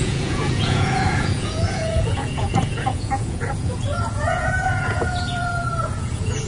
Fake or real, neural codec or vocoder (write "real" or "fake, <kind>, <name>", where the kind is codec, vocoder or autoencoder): fake, vocoder, Vocos